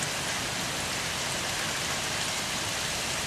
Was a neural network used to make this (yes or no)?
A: no